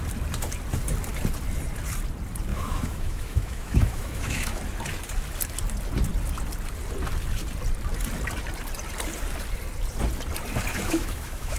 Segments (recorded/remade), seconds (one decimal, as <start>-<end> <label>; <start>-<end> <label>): 0.0-2.5 recorded; 2.5-4.6 remade; 4.6-10.7 recorded; 10.7-11.6 remade